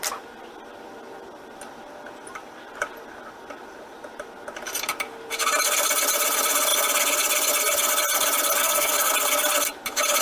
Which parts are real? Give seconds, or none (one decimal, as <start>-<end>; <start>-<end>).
0.0-8.6; 9.1-10.2